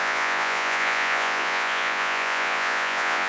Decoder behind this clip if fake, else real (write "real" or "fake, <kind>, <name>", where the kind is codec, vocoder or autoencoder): fake, vocoder, Vocos